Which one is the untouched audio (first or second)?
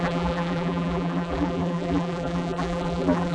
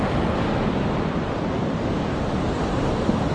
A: second